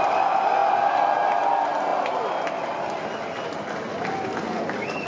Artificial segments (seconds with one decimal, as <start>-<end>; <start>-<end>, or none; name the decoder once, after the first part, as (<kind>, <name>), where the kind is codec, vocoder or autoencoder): none